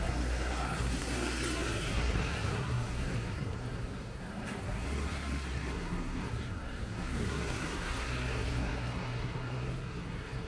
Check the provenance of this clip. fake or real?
fake